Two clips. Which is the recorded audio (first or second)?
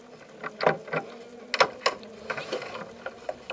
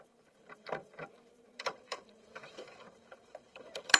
first